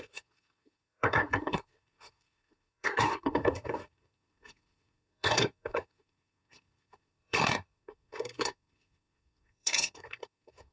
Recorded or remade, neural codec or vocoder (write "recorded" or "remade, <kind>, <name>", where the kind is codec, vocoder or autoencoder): remade, codec, SNAC